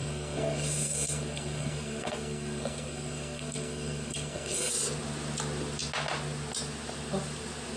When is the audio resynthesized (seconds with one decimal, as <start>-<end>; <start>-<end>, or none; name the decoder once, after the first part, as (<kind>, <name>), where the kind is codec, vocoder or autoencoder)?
0.0-4.7 (codec, SNAC)